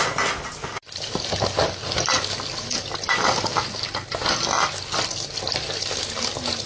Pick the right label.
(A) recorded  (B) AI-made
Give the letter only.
A